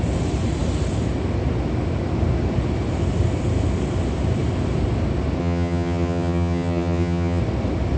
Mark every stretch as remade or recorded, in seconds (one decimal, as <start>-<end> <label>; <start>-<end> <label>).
0.0-5.4 recorded; 5.4-7.4 remade; 7.4-8.0 recorded